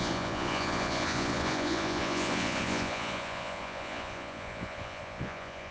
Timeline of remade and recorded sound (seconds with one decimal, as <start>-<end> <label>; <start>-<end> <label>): 0.0-5.7 remade